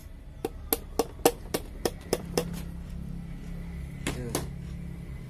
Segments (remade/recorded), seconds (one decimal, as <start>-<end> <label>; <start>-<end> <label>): 0.0-1.4 recorded; 1.4-2.4 remade; 2.4-5.3 recorded